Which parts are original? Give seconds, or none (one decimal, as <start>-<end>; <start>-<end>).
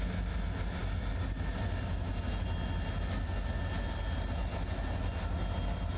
0.0-6.0